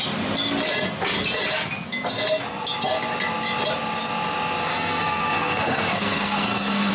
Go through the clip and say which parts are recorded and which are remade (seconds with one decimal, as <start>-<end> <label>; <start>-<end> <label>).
0.0-4.7 recorded; 4.7-6.9 remade